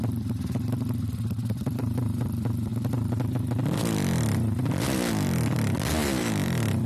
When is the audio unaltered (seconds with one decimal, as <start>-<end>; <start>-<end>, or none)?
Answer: 2.7-6.2